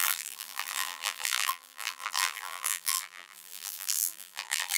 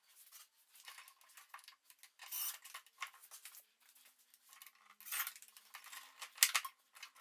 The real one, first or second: second